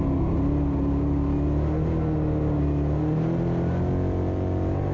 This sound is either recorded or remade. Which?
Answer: recorded